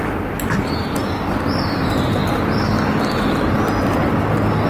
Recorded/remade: recorded